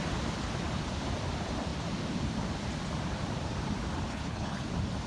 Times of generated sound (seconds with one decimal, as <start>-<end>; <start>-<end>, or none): 4.1-4.6